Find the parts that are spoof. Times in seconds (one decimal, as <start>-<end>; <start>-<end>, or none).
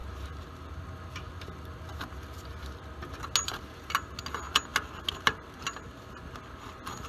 none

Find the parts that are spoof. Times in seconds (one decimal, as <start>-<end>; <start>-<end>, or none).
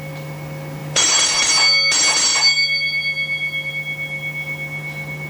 0.8-1.5; 2.3-3.7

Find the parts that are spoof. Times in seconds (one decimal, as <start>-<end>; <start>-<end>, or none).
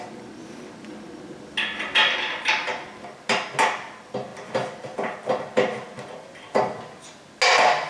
none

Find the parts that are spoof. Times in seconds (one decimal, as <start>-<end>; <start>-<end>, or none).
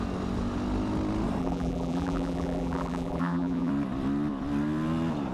1.4-3.7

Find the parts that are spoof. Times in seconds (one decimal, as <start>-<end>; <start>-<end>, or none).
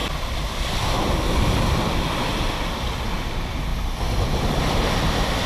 3.3-3.7